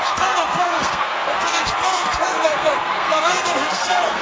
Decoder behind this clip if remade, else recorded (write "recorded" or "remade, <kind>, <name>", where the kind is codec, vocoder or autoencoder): remade, codec, SNAC